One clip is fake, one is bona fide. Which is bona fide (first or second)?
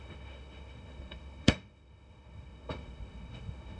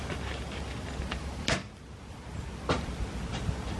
second